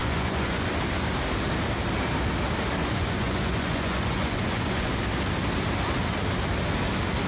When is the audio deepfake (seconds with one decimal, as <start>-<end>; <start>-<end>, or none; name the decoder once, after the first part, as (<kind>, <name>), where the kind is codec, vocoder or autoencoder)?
0.0-0.7 (vocoder, Vocos); 2.8-4.9